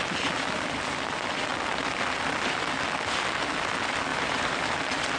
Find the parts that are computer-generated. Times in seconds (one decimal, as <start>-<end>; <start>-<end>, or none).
4.1-4.8